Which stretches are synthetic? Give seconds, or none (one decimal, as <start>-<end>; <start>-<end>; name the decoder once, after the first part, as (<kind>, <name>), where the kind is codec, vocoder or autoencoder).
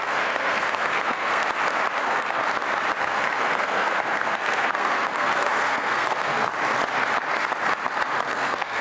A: 0.0-1.4 (codec, SNAC); 2.0-2.4; 3.0-6.5; 8.3-8.8